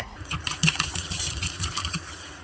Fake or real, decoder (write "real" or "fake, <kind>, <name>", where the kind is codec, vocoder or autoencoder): fake, vocoder, Vocos